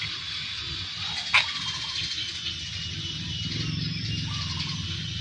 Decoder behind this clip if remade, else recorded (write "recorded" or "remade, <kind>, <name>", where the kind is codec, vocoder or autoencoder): recorded